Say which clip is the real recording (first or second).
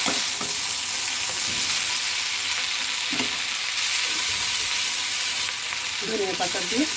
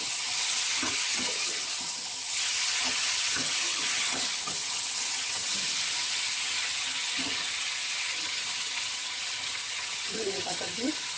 first